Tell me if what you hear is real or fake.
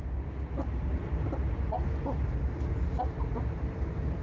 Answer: real